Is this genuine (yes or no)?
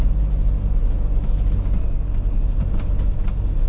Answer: yes